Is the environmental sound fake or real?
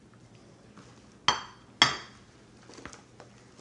real